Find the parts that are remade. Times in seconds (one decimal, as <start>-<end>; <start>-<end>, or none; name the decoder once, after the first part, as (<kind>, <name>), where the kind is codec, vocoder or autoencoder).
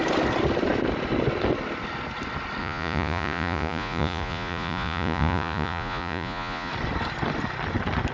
2.6-6.7 (vocoder, Vocos)